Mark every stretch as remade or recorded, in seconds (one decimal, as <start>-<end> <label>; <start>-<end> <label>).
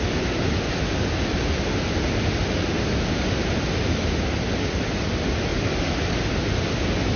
0.0-7.2 recorded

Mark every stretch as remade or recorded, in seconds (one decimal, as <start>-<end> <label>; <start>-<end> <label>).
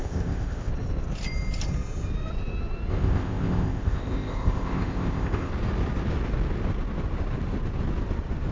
0.0-0.7 remade; 0.7-2.9 recorded; 2.9-5.5 remade; 5.5-8.5 recorded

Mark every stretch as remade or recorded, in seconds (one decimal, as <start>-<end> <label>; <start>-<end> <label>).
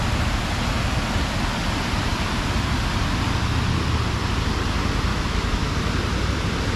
0.0-5.1 recorded; 5.1-5.7 remade; 5.7-6.8 recorded